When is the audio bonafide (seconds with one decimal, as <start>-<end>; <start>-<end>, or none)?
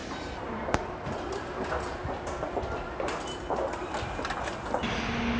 0.6-5.4